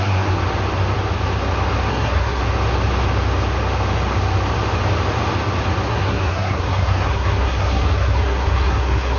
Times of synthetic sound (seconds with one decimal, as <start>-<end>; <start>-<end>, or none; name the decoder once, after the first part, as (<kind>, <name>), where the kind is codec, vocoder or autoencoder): 0.0-0.4 (codec, SNAC); 1.9-2.4; 5.9-9.2